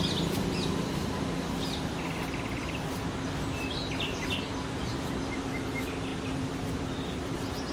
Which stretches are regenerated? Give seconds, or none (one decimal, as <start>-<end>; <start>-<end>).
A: none